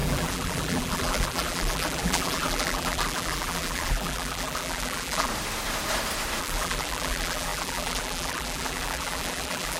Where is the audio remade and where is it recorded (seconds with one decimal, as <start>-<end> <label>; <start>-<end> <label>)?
0.0-5.3 remade; 5.3-6.4 recorded; 6.4-9.8 remade